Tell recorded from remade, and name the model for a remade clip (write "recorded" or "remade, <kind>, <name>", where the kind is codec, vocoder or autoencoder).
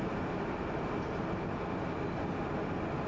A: recorded